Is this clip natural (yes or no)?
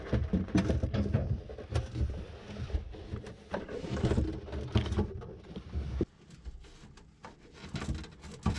yes